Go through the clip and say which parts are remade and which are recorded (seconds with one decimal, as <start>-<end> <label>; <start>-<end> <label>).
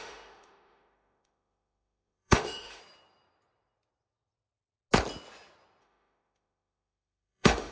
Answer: 0.0-2.8 remade; 2.8-5.8 recorded; 5.8-7.7 remade